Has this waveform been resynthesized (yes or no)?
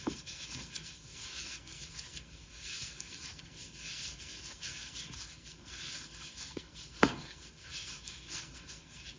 yes